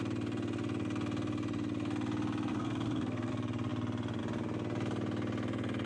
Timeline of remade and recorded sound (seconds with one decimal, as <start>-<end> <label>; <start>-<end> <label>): 0.0-2.5 recorded; 2.5-3.3 remade; 3.3-5.9 recorded